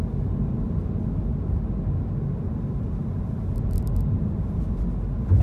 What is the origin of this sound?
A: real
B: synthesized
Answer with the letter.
A